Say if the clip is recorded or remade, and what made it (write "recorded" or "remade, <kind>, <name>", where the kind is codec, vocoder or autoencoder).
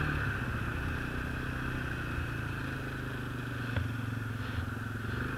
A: recorded